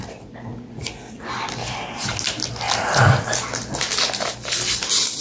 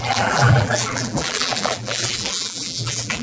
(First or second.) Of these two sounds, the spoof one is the second